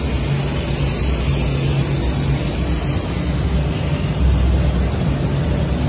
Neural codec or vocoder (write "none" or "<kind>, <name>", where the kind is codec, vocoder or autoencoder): none